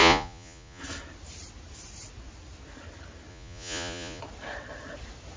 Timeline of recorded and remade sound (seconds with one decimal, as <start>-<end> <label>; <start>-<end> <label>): 0.0-0.8 remade; 0.8-3.3 recorded; 3.3-4.2 remade; 4.2-5.4 recorded